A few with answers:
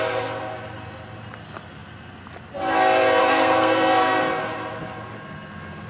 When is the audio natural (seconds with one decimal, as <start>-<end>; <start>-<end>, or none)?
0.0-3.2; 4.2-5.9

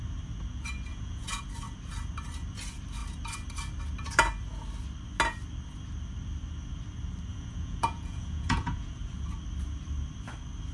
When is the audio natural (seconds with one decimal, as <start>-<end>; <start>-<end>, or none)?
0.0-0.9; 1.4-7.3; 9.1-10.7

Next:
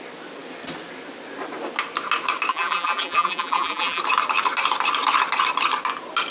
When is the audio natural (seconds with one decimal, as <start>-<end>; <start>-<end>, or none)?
0.0-2.5; 4.0-6.3